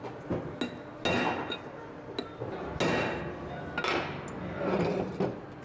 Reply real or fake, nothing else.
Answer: real